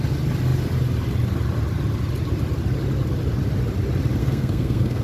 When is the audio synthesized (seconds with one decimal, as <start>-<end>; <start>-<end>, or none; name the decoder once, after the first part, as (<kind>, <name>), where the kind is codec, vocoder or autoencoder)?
4.2-5.0 (codec, SNAC)